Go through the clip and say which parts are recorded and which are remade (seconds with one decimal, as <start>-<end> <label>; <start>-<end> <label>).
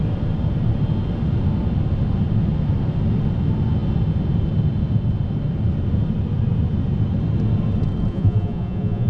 0.0-8.1 recorded; 8.1-9.1 remade